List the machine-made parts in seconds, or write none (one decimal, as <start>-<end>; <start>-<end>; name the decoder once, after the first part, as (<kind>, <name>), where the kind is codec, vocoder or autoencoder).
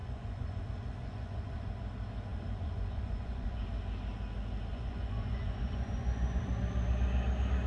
0.0-0.6 (vocoder, Vocos); 1.0-1.7; 2.3-3.6; 4.7-6.6